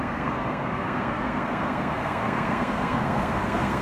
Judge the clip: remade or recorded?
remade